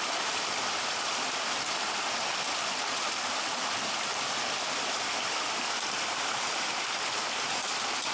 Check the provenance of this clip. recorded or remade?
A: remade